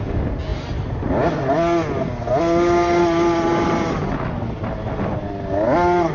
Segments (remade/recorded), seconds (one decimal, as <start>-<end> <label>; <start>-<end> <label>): 0.0-6.1 recorded